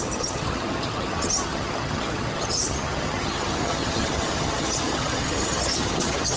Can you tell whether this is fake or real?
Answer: fake